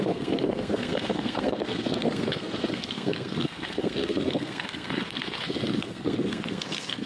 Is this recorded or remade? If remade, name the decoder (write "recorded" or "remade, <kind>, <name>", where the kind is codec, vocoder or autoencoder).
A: remade, codec, SNAC